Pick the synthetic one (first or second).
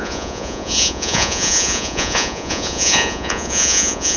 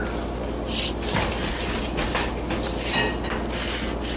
first